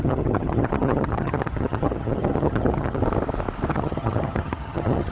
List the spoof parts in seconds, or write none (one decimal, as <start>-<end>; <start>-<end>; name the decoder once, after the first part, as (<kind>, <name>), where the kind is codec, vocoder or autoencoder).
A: 0.0-3.0 (vocoder, HiFi-GAN); 3.7-5.1